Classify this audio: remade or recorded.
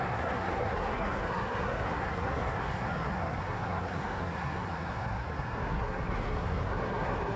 remade